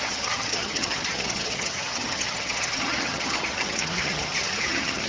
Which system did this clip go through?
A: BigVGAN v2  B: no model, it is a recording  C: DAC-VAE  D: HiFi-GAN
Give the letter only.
D